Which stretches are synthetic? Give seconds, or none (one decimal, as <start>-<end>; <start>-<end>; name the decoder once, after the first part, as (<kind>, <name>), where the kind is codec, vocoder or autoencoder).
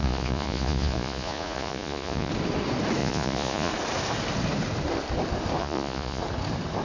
0.0-2.3 (vocoder, Vocos); 3.0-3.7; 5.6-6.2